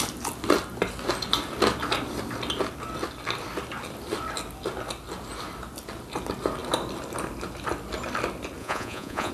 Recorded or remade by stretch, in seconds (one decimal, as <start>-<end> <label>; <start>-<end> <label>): 0.0-8.6 recorded; 8.6-9.3 remade